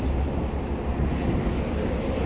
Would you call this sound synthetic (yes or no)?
no